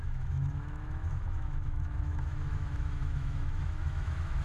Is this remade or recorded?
remade